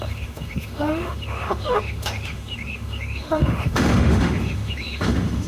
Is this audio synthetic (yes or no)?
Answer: yes